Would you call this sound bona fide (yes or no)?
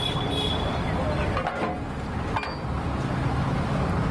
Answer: yes